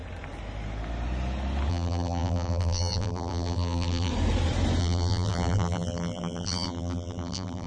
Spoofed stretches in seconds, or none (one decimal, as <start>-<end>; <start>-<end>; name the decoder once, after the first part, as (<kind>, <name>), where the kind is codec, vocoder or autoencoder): 1.7-4.1 (vocoder, BigVGAN v2); 4.8-7.7